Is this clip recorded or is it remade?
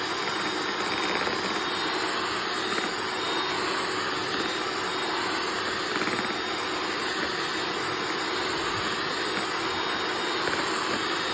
recorded